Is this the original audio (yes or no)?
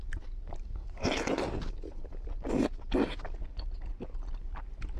yes